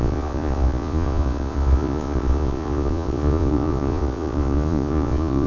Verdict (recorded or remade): remade